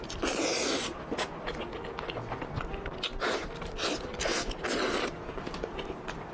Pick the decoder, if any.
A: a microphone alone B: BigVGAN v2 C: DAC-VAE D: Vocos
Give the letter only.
A